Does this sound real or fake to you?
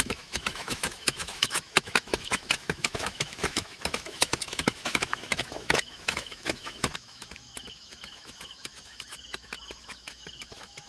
fake